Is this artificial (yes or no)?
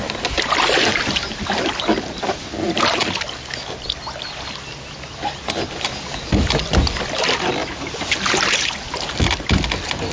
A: no